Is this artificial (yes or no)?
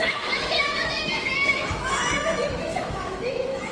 yes